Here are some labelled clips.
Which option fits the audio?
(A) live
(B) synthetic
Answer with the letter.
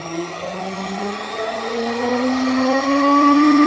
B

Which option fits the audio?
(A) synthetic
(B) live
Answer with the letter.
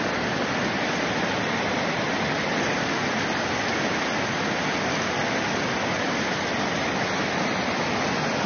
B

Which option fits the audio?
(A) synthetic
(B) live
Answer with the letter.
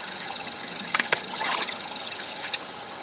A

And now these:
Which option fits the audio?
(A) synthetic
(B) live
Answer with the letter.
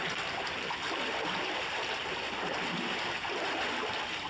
B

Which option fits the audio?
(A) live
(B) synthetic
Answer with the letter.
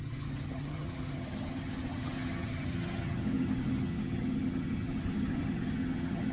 B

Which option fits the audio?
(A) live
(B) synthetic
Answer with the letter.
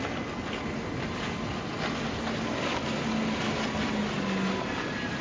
A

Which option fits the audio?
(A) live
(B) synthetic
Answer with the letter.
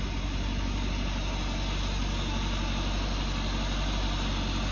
A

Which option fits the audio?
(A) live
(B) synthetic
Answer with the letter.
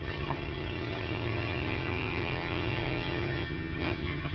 B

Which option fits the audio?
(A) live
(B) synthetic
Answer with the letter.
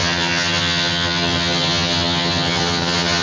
B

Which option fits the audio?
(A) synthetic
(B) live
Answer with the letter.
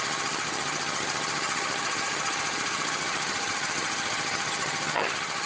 A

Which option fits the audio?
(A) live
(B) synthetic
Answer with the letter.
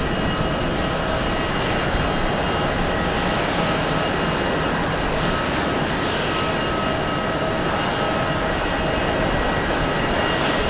A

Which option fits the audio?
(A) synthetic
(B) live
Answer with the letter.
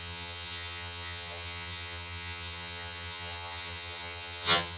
A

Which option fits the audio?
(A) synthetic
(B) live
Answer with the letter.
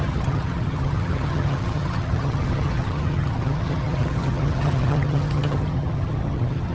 A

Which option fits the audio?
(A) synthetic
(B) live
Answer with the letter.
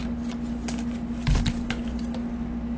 B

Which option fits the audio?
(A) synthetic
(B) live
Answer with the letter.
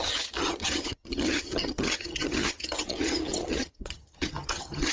A